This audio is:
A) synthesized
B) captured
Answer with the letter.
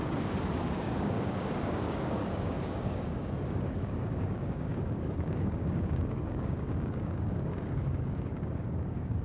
A